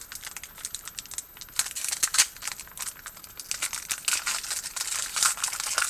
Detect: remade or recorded recorded